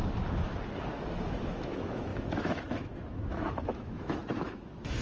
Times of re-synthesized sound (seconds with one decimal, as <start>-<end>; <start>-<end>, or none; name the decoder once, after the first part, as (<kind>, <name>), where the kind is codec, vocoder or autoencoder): 0.9-5.0 (autoencoder, DAC-VAE)

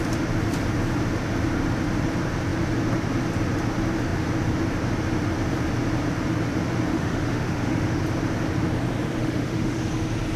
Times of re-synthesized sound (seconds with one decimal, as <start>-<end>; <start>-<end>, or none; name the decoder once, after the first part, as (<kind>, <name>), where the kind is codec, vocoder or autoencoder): 6.9-8.0 (autoencoder, DAC-VAE); 9.2-9.8

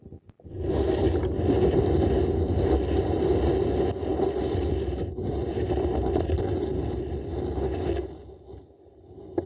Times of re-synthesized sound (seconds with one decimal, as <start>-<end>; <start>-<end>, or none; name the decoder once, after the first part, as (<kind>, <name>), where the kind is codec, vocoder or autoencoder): none

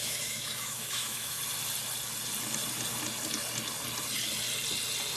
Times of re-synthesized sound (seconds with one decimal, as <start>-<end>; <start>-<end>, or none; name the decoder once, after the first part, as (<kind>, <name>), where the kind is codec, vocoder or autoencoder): 0.0-1.4 (autoencoder, DAC-VAE)

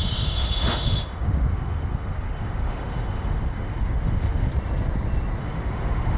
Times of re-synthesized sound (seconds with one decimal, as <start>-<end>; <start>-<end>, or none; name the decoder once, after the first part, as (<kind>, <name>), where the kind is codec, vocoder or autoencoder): 0.0-4.5 (autoencoder, DAC-VAE); 5.4-6.2